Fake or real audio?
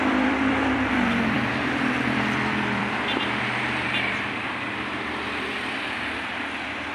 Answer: fake